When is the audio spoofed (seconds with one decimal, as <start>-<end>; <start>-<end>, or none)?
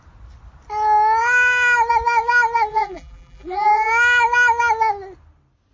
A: 2.7-3.9